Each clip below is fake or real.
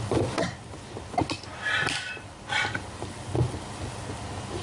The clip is real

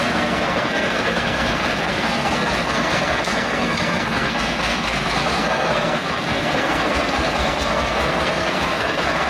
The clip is fake